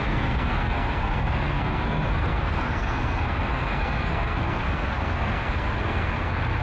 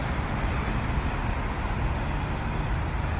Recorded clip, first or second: second